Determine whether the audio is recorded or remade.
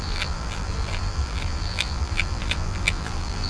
remade